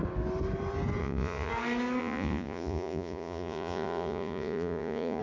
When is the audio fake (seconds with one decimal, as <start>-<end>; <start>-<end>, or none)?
1.0-1.5; 2.0-5.2